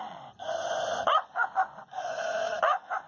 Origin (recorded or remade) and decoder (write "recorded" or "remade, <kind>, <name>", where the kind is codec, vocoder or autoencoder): remade, vocoder, Vocos